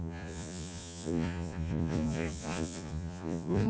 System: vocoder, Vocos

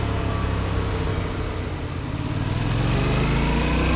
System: none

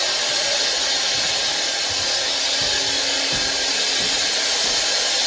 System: none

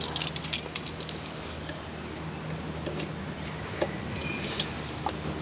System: none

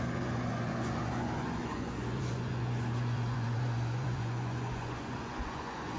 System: vocoder, Vocos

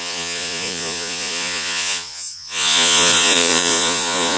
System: vocoder, Vocos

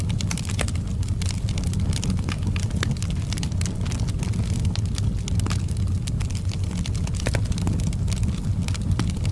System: none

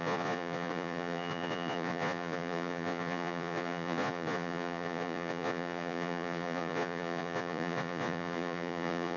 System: vocoder, Vocos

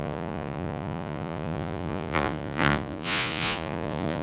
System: vocoder, Vocos